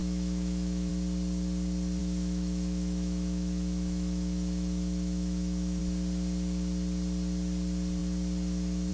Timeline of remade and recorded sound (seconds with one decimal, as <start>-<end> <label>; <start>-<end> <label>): 0.0-0.9 remade; 0.9-2.0 recorded; 2.0-5.8 remade; 5.8-8.9 recorded